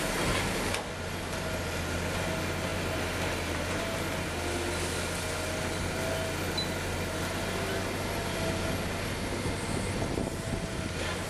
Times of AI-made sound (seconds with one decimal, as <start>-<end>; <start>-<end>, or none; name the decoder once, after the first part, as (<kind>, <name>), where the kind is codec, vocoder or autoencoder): none